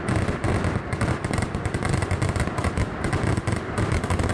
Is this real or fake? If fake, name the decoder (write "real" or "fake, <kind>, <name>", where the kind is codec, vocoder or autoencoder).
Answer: real